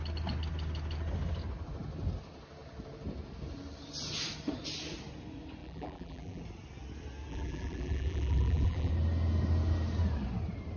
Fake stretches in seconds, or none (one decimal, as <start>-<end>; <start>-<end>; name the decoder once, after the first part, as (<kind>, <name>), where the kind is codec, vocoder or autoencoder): 5.6-6.4 (vocoder, BigVGAN v2); 7.3-8.9